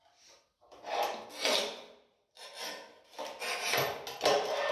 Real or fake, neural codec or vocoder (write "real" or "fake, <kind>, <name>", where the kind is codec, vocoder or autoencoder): real